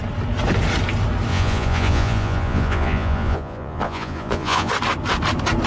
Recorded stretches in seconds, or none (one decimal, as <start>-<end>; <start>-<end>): 0.0-1.3; 4.7-5.7